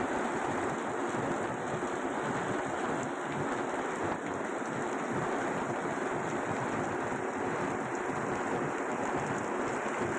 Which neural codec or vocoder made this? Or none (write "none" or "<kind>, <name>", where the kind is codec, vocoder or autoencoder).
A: none